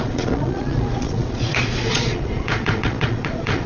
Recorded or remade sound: remade